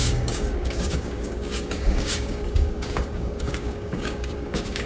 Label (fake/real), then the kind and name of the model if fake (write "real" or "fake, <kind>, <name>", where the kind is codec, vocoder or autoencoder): fake, codec, DAC